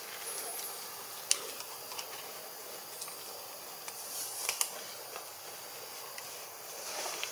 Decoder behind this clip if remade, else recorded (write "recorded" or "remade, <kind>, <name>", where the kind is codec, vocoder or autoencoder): recorded